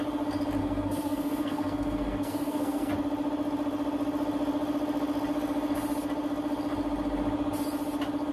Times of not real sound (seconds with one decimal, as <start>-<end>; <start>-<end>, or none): 0.6-2.9